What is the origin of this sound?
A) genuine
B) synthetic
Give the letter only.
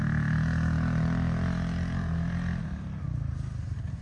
A